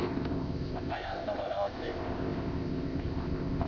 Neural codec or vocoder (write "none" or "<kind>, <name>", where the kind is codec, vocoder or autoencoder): codec, ZipCodec